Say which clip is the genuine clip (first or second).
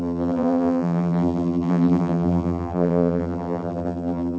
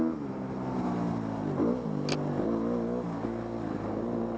second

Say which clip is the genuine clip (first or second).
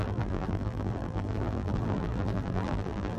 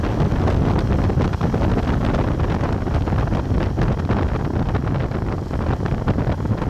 second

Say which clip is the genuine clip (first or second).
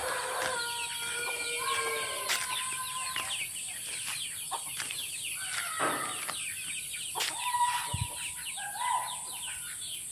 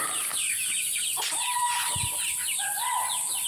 first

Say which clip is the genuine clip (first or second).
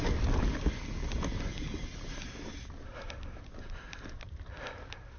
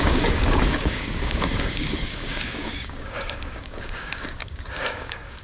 first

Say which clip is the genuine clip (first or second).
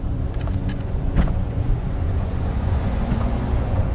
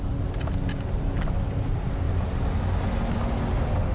second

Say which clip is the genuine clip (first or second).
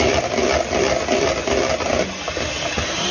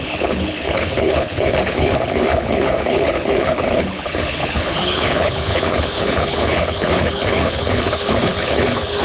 first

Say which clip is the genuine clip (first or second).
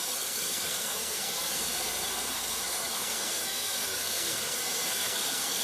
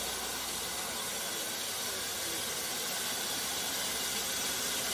second